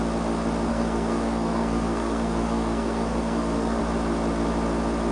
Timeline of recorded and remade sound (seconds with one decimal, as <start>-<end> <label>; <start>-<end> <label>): 0.0-0.7 recorded; 0.7-3.8 remade; 3.8-5.1 recorded